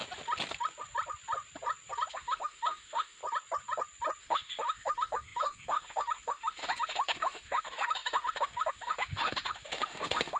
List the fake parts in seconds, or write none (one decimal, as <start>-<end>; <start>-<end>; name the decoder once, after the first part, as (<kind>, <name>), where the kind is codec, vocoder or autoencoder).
2.1-3.2 (autoencoder, DAC-VAE); 4.2-10.4